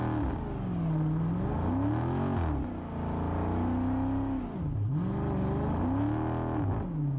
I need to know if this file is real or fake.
real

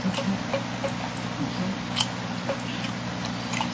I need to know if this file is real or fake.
real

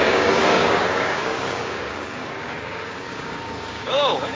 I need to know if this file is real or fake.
fake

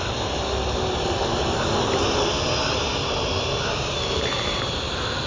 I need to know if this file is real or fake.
real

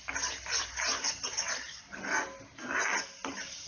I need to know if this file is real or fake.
real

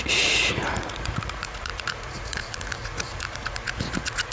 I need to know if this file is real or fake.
fake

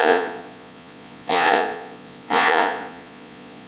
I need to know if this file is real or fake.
fake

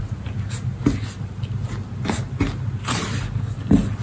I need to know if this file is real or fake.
real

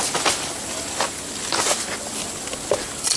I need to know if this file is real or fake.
real